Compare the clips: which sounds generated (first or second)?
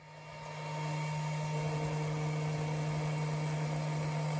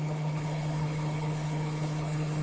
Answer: second